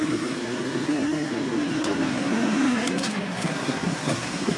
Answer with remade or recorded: remade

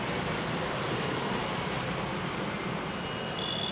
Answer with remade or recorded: recorded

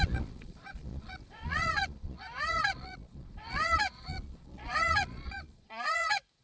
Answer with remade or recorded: remade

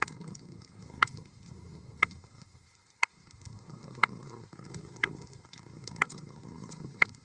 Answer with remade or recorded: remade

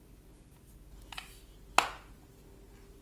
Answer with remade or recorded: recorded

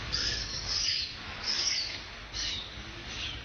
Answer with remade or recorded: remade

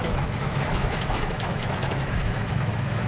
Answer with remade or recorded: remade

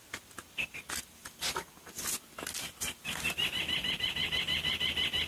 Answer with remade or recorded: recorded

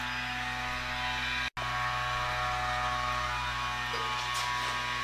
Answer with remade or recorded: recorded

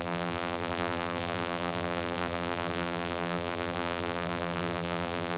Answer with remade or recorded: remade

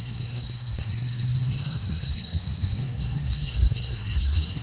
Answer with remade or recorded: remade